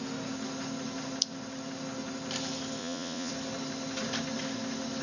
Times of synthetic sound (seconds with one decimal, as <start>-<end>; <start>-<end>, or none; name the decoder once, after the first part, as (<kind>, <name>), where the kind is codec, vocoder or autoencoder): 2.8-3.3 (vocoder, Vocos)